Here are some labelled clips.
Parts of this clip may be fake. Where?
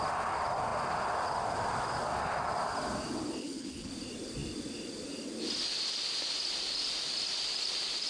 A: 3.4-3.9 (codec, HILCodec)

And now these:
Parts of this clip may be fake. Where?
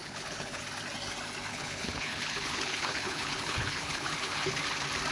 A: 0.0-0.6 (codec, HILCodec); 1.5-4.6